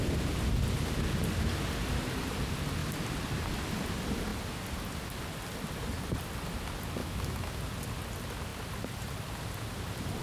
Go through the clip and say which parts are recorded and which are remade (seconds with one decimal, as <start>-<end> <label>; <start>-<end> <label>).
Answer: 0.0-7.0 recorded; 7.0-7.6 remade; 7.6-10.2 recorded